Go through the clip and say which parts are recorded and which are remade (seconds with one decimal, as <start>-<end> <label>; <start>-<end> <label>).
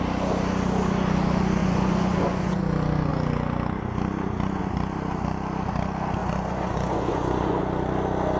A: 0.0-1.6 recorded; 1.6-2.6 remade; 2.6-6.2 recorded; 6.2-7.6 remade; 7.6-8.4 recorded